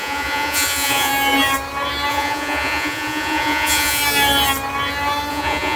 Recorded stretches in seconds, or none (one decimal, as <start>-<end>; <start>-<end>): 1.1-2.1; 4.0-5.3

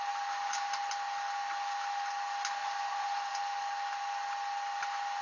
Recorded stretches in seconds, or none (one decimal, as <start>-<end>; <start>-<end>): 0.0-5.2

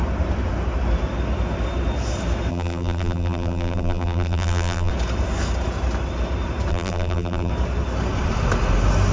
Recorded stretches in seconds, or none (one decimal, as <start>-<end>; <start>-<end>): 0.0-2.5; 4.9-6.7; 7.5-9.1

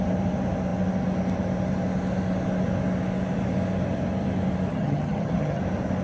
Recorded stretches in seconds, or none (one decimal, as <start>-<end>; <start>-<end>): 0.0-4.7; 5.6-6.0